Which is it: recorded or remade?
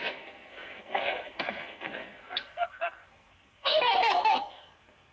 remade